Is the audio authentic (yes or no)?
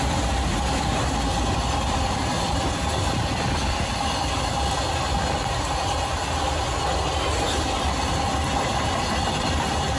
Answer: yes